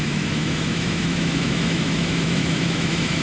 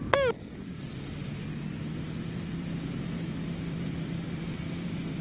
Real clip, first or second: second